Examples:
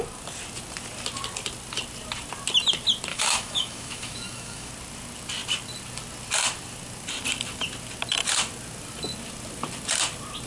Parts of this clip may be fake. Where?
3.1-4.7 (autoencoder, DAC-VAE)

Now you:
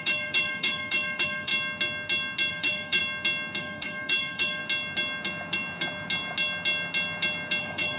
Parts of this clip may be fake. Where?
0.0-1.5 (autoencoder, DAC-VAE); 2.5-3.0; 3.6-4.6; 7.6-8.0

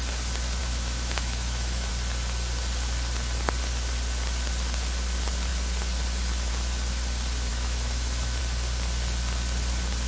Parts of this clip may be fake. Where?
0.6-1.9 (autoencoder, DAC-VAE); 7.5-8.4

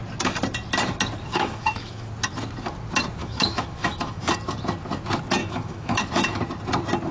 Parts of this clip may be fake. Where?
1.3-2.1 (autoencoder, DAC-VAE); 3.2-4.3; 5.4-6.4

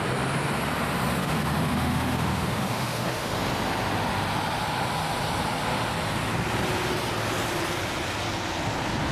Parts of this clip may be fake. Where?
1.2-3.3 (autoencoder, DAC-VAE)

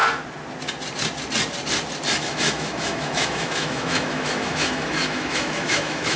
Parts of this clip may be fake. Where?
2.2-6.2 (autoencoder, DAC-VAE)

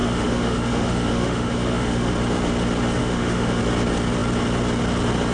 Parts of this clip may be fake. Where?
0.0-2.1 (autoencoder, DAC-VAE); 3.0-3.6